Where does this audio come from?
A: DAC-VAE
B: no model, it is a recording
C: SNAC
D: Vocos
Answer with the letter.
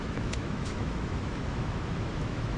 A